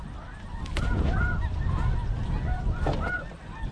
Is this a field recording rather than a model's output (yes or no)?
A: yes